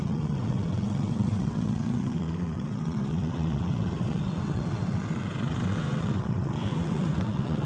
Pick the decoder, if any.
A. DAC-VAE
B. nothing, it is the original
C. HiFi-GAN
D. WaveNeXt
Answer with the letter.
D